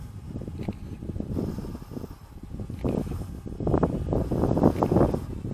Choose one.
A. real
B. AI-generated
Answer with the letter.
A